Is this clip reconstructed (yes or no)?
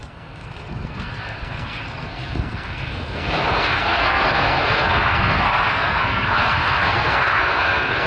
yes